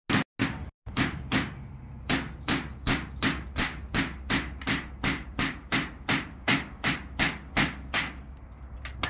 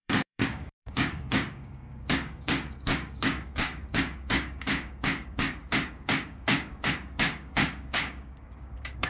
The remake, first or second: second